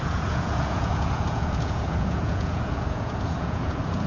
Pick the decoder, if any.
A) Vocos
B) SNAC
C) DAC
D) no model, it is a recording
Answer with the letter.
A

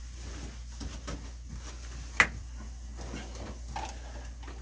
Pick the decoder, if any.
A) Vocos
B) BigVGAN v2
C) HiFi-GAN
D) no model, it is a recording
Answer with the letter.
D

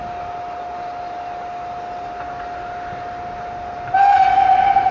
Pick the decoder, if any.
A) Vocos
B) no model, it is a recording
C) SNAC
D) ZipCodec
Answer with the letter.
B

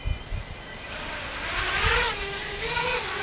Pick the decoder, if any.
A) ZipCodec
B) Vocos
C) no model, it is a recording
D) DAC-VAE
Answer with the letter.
C